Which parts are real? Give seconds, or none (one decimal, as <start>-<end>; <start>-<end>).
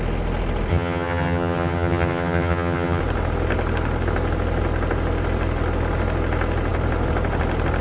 0.0-0.7; 3.0-7.8